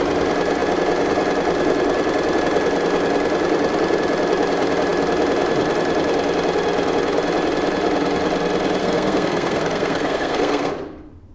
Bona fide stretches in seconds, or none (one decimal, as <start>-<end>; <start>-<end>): 0.0-8.8; 10.7-11.3